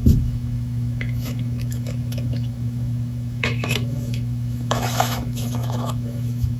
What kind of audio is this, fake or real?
fake